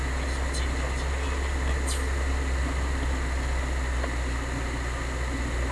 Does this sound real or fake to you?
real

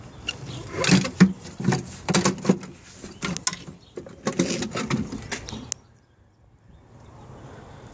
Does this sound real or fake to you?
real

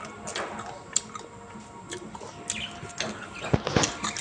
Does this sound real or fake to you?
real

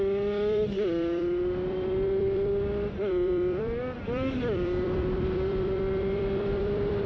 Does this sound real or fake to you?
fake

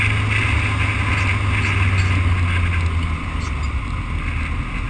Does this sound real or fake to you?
real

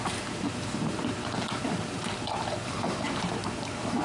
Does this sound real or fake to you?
fake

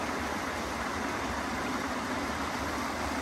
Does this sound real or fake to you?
real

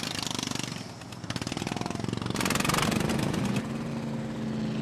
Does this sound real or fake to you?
real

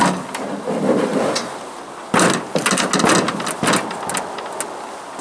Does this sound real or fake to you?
real